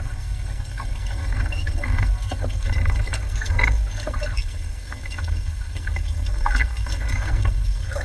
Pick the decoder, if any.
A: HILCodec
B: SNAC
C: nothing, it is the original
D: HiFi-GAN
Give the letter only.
B